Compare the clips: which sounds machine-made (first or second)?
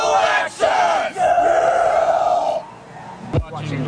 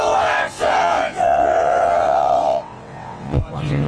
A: second